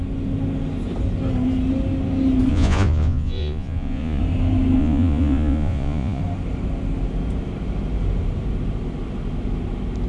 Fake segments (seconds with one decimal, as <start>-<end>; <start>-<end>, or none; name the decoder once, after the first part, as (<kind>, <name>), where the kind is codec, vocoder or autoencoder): 2.5-4.2 (vocoder, Vocos); 4.8-6.2